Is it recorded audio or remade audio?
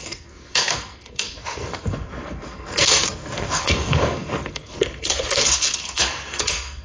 remade